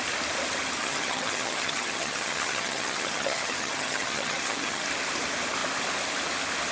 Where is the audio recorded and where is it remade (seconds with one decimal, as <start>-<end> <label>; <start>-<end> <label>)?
0.0-0.8 recorded; 0.8-4.8 remade; 4.8-6.7 recorded